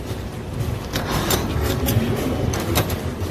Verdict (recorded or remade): remade